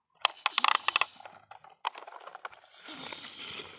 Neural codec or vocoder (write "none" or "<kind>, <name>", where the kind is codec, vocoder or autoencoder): none